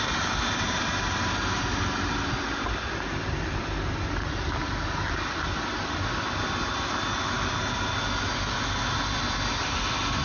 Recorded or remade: recorded